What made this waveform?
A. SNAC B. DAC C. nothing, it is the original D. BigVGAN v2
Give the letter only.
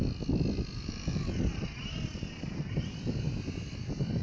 C